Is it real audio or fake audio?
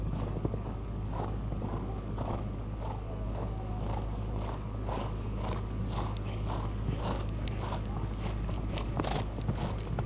fake